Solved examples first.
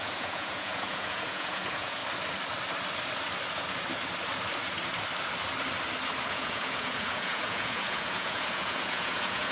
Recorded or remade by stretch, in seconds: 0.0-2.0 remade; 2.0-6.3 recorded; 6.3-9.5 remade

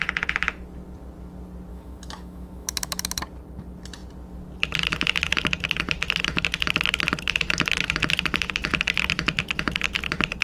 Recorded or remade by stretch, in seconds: 0.0-1.7 recorded; 1.7-3.2 remade; 3.2-10.4 recorded

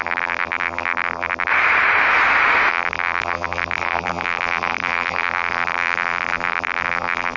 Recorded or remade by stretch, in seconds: 0.0-1.5 remade; 1.5-2.7 recorded; 2.7-7.4 remade

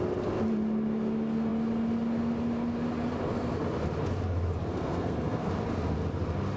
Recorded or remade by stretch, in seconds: 0.0-4.7 recorded; 4.7-5.5 remade; 5.5-6.6 recorded

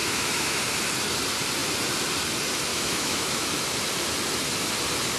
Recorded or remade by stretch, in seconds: 0.0-0.6 remade; 0.6-2.7 recorded; 2.7-3.5 remade; 3.5-5.2 recorded

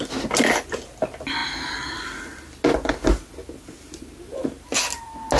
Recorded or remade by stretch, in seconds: 0.0-5.4 recorded

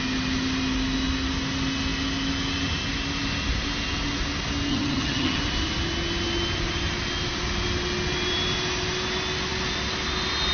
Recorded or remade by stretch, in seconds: 0.0-4.7 recorded; 4.7-5.4 remade; 5.4-10.5 recorded

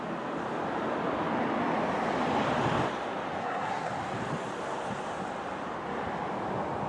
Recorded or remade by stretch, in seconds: 0.0-3.4 recorded; 3.4-3.9 remade; 3.9-6.9 recorded